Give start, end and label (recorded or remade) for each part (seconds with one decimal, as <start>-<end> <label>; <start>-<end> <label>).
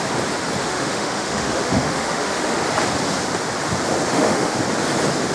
0.0-0.6 recorded; 0.6-2.6 remade; 2.6-4.1 recorded; 4.1-4.6 remade; 4.6-5.3 recorded